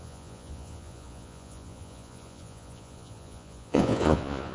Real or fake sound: fake